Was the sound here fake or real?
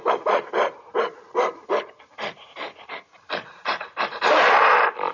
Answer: fake